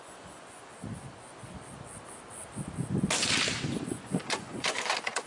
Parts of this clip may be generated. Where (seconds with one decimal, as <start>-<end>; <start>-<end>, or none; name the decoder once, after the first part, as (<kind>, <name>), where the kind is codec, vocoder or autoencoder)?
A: 0.0-0.7 (vocoder, Vocos); 3.9-5.3